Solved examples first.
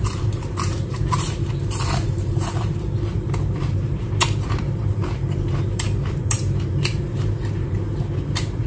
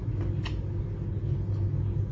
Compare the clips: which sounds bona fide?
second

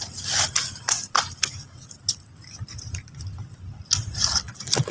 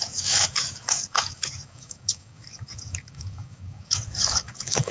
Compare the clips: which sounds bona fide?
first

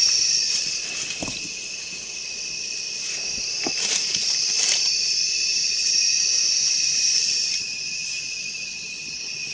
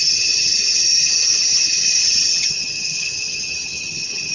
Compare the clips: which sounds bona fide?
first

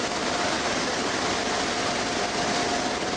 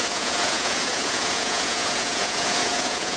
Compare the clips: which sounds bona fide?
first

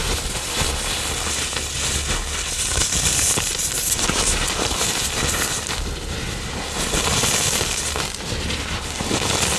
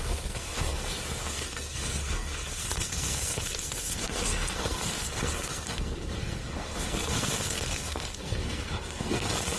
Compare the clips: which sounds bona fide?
first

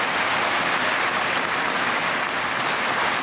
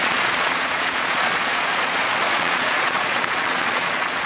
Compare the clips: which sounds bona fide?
first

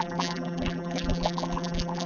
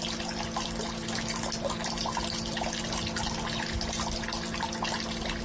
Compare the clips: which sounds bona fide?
second